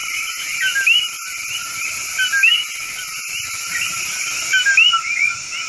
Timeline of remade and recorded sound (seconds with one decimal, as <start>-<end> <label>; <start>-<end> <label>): 0.0-1.9 remade; 1.9-2.8 recorded; 2.8-3.4 remade; 3.4-5.7 recorded